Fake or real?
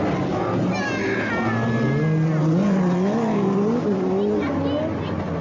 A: real